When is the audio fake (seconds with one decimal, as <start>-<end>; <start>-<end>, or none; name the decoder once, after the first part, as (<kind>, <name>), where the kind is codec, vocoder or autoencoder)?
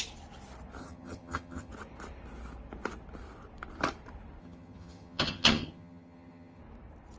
0.8-1.7 (vocoder, HiFi-GAN); 4.4-6.6